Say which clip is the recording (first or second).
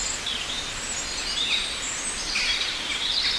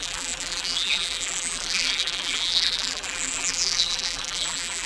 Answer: first